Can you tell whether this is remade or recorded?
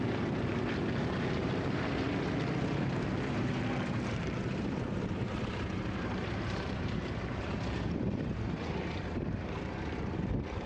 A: remade